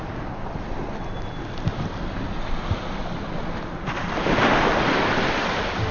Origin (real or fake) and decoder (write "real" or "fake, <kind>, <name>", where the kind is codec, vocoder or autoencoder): real